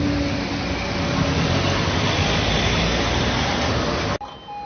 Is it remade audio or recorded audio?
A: recorded